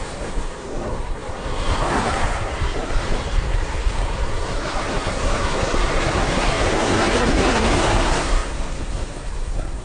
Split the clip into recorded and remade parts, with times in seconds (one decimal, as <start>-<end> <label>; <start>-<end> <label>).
0.0-9.8 remade